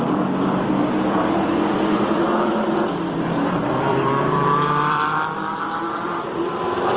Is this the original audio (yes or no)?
no